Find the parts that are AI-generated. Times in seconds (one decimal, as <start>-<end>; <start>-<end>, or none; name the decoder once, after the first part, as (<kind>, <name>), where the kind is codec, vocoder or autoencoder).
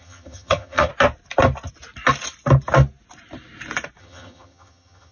0.0-0.9 (vocoder, HiFi-GAN); 4.0-5.1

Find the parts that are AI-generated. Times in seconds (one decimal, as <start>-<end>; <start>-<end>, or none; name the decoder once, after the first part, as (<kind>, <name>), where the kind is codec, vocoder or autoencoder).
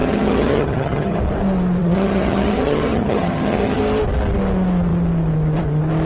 0.0-1.2 (vocoder, HiFi-GAN); 1.8-3.8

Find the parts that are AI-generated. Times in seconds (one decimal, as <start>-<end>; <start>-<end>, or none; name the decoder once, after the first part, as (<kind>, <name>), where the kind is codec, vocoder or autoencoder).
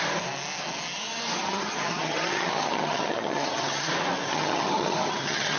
1.4-3.9 (vocoder, HiFi-GAN); 4.3-5.6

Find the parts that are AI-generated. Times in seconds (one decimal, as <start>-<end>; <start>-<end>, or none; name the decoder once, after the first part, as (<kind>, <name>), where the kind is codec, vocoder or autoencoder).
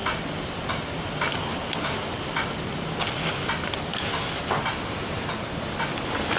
none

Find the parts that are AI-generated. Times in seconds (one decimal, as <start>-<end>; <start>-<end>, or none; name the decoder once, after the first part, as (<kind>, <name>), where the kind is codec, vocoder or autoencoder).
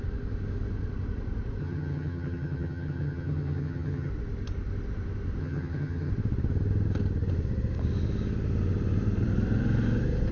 1.6-4.1 (vocoder, HiFi-GAN); 5.4-6.1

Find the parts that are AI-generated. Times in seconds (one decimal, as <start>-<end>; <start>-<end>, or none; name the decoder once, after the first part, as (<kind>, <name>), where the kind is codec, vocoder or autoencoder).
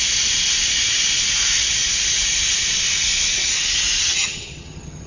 4.0-5.1 (vocoder, HiFi-GAN)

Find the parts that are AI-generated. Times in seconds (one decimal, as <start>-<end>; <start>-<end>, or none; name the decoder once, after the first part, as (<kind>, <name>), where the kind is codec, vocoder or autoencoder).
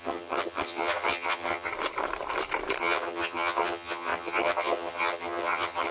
0.0-1.7 (vocoder, HiFi-GAN); 2.8-5.9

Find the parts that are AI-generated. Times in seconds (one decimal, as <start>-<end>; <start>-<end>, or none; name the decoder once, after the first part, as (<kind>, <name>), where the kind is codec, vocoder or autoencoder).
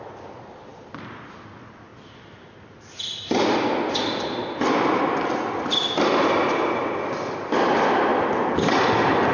none